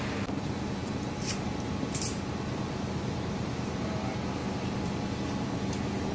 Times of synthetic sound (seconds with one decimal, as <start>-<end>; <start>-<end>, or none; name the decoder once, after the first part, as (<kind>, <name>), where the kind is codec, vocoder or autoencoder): none